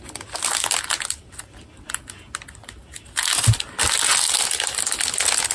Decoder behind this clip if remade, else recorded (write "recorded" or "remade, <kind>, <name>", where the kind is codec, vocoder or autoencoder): recorded